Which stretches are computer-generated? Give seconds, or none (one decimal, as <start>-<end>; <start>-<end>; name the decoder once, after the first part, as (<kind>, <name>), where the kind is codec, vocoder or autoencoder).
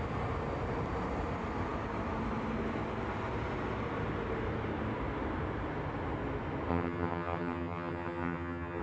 6.7-8.8 (vocoder, HiFi-GAN)